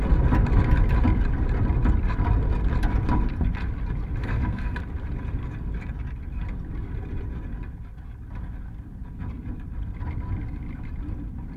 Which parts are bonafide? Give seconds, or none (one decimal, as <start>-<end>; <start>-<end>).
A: 0.0-4.2; 4.8-11.6

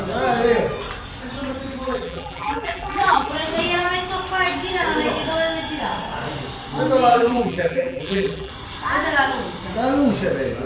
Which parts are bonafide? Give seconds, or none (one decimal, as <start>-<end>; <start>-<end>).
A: 0.0-1.8; 3.3-7.1; 8.5-10.7

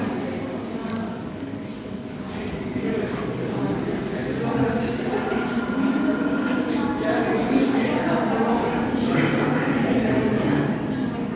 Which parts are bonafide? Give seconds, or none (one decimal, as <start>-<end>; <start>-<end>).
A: 0.0-0.8; 4.0-7.4; 8.2-11.4

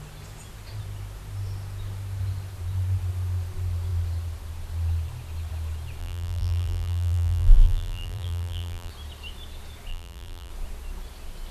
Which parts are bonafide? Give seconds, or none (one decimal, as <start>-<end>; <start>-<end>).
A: 0.0-6.0; 8.9-9.9; 10.5-11.5